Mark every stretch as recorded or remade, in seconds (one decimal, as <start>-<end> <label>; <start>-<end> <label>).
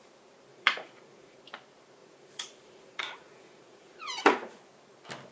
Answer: 0.0-0.5 recorded; 0.5-1.4 remade; 1.4-2.0 recorded; 2.0-4.6 remade; 4.6-5.3 recorded